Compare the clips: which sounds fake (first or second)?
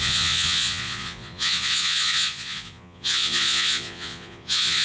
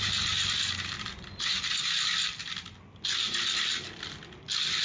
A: first